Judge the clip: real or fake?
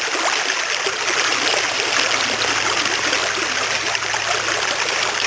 real